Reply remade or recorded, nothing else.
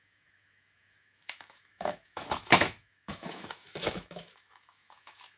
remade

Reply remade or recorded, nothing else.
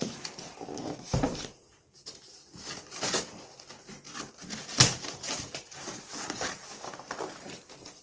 recorded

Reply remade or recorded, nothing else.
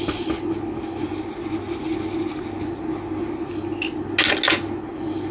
recorded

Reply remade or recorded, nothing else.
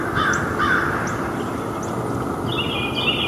recorded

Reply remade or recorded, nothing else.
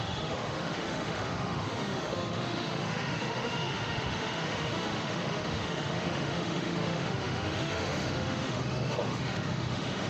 remade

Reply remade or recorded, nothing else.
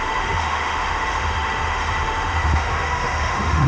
remade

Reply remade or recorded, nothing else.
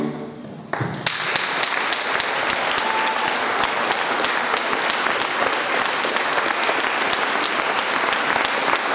recorded